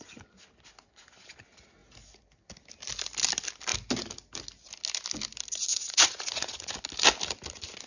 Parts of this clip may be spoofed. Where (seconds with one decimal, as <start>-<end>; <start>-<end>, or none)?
5.7-6.7